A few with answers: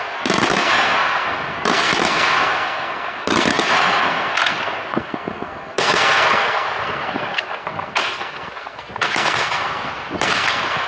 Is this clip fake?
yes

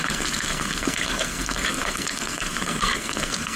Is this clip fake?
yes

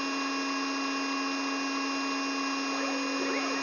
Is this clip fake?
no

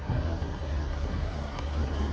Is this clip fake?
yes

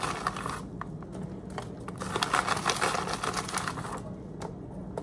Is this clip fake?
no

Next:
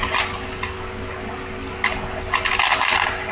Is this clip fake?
no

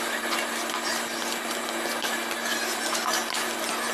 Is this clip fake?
no